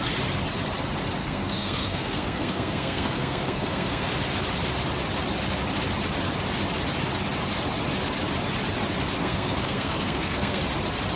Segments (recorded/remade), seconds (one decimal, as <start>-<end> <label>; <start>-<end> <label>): 0.0-1.2 recorded; 1.2-4.1 remade; 4.1-9.2 recorded; 9.2-10.6 remade; 10.6-11.2 recorded